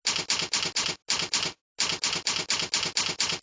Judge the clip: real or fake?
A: real